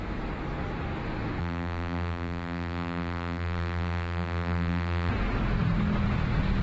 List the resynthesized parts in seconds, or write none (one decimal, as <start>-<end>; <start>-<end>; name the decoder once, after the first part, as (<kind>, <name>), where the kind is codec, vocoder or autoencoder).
1.4-5.1 (vocoder, BigVGAN v2)